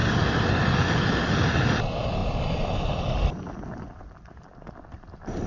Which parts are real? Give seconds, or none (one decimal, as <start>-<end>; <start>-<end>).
0.0-5.5